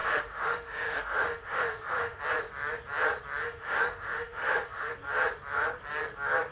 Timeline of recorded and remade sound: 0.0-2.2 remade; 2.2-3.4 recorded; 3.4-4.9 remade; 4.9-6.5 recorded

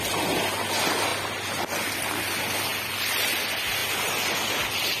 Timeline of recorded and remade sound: 0.0-5.0 recorded

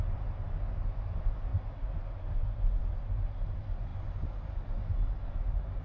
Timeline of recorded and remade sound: 0.0-5.8 recorded